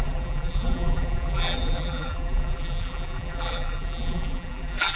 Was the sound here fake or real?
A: fake